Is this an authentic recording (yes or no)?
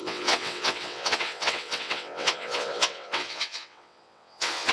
no